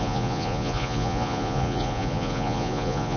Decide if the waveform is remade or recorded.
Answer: remade